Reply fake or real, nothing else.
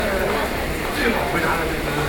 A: real